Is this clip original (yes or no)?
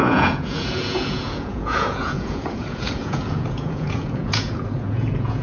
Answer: no